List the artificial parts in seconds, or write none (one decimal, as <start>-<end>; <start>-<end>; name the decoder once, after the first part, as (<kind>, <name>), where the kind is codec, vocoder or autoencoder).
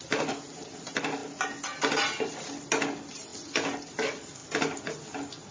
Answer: none